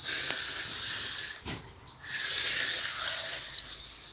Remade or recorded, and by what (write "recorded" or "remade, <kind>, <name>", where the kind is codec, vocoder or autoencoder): recorded